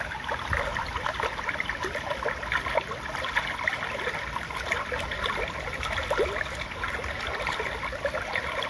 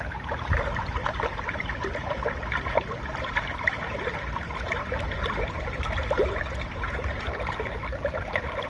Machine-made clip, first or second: second